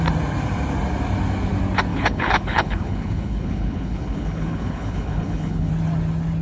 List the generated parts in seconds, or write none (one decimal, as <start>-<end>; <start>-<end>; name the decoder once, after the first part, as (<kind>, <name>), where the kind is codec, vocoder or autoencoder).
1.9-5.7 (codec, HILCodec)